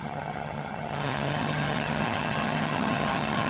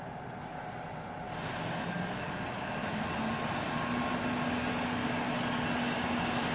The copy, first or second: first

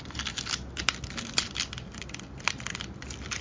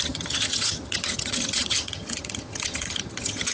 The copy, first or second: second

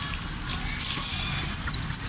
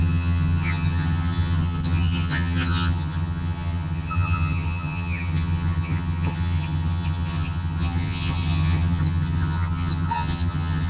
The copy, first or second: second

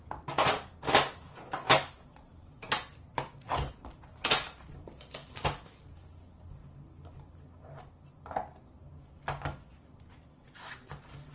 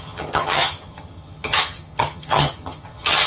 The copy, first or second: second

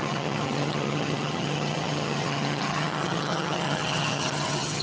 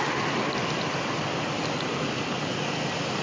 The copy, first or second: first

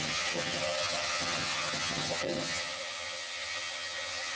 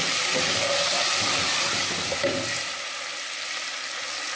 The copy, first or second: first